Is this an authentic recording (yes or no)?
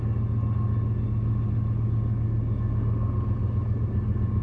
yes